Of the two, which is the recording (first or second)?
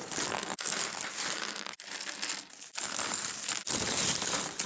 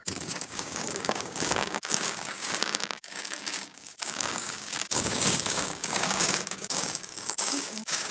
first